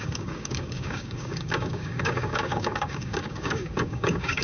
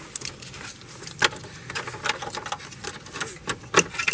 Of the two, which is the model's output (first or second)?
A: first